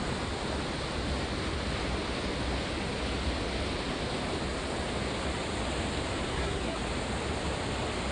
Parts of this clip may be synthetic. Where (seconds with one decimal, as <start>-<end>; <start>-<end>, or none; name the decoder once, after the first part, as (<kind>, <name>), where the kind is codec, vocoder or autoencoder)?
6.3-6.8 (codec, SNAC)